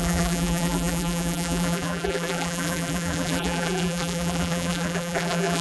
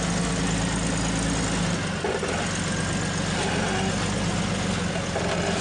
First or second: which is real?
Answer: second